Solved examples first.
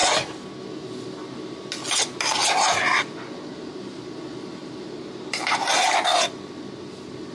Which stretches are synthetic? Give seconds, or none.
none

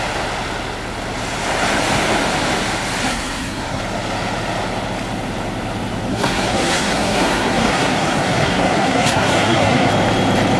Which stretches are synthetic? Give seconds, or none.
3.1-3.8; 6.1-9.9

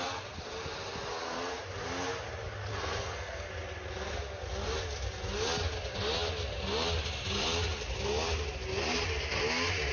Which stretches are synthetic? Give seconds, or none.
2.7-3.5

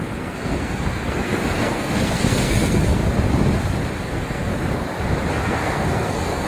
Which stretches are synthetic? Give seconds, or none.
0.0-3.0; 4.0-4.5; 5.3-6.5